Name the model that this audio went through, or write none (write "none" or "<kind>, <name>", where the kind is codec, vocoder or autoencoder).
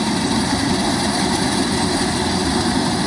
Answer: vocoder, BigVGAN v2